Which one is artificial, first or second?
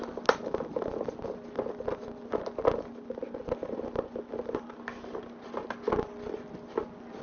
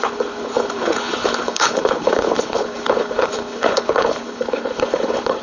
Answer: second